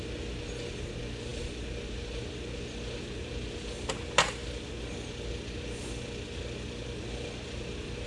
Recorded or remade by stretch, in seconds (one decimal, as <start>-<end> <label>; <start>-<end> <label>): 0.0-8.1 recorded